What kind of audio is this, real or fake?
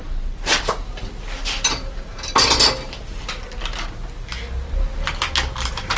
real